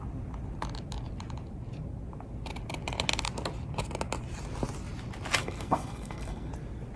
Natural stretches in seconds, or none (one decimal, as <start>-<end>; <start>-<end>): 0.0-5.4; 6.5-7.0